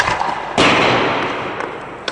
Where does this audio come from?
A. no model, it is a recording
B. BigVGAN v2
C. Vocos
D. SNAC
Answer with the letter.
A